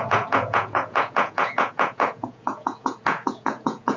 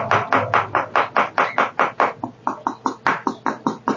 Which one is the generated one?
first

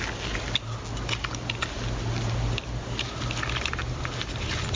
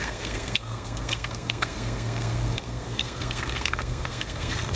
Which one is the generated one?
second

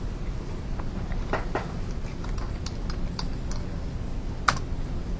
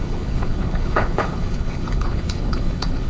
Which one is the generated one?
second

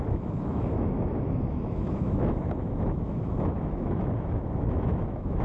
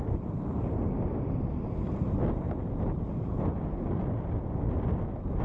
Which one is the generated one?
first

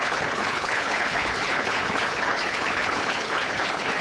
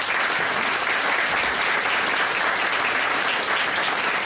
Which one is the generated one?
first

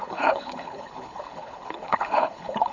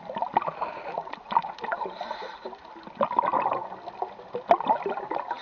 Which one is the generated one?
first